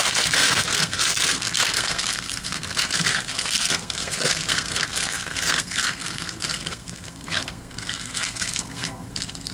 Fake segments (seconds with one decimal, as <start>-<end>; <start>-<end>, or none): 0.0-9.5